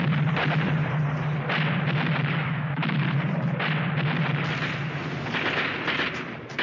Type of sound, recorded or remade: recorded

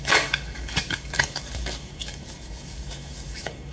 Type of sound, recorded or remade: remade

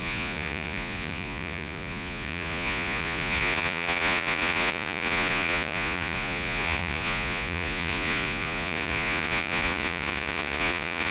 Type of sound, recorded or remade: remade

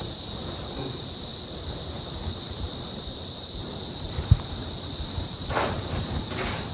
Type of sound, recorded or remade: remade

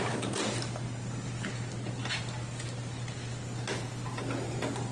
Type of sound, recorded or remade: recorded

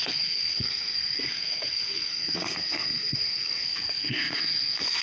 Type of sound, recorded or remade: remade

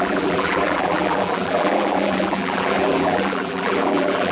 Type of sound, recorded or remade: remade